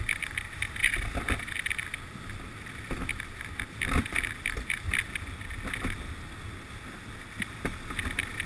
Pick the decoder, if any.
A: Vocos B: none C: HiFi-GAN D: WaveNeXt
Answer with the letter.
B